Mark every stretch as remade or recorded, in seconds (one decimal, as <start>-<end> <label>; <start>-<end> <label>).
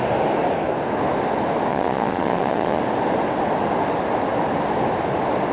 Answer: 0.0-1.7 recorded; 1.7-2.8 remade; 2.8-5.5 recorded